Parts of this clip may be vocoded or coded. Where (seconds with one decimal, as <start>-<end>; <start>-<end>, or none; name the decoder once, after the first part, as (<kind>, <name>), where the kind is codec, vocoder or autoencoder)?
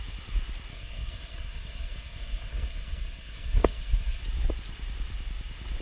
0.7-4.2 (codec, SNAC)